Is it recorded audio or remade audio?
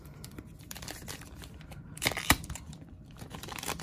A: remade